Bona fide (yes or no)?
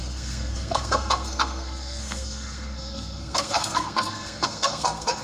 no